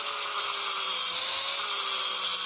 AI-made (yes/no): no